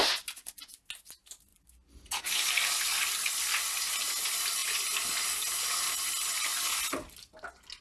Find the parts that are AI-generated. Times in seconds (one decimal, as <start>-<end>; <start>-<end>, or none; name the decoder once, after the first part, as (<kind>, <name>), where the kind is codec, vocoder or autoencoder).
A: none